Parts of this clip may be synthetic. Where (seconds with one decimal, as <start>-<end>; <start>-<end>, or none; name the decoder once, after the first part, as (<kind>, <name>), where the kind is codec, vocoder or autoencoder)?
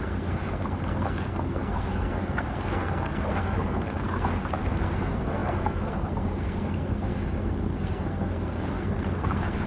0.0-9.7 (codec, SNAC)